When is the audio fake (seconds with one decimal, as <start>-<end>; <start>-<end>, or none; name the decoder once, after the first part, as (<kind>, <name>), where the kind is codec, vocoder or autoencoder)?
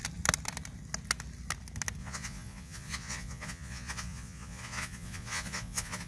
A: 2.0-6.1 (vocoder, Vocos)